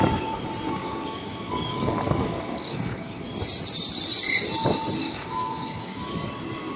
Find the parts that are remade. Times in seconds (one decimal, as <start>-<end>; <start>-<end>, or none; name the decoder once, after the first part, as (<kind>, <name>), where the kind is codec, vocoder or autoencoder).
0.8-3.2 (codec, DAC); 5.0-6.3